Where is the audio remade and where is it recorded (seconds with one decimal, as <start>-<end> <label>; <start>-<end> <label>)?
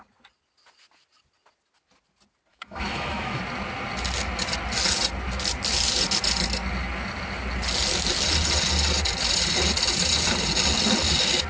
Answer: 0.0-2.5 recorded; 2.5-3.4 remade; 3.4-11.5 recorded